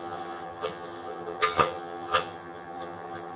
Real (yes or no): no